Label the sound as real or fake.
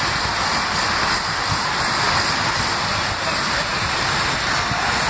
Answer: real